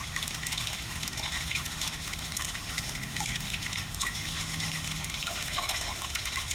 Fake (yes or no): yes